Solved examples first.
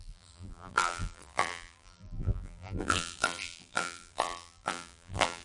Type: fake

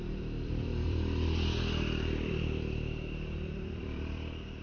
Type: fake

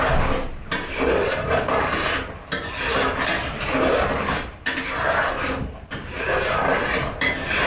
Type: real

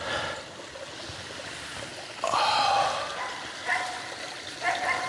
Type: real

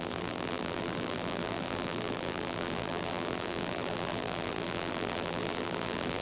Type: fake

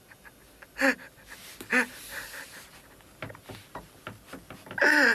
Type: real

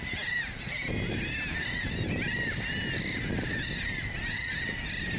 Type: real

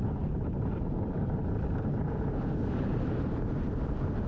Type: fake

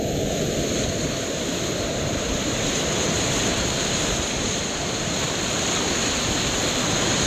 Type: fake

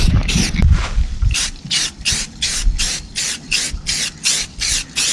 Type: real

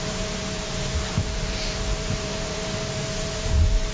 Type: fake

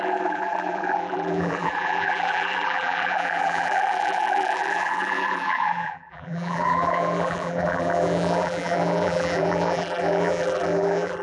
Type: fake